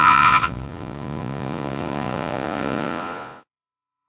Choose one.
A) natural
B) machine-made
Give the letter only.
B